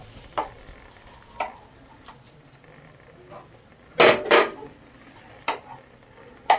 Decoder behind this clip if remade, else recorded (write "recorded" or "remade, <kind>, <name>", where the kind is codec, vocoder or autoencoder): recorded